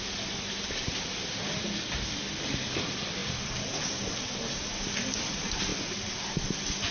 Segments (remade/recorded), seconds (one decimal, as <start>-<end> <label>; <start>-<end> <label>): 0.0-6.9 recorded